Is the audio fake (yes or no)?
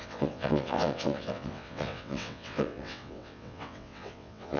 yes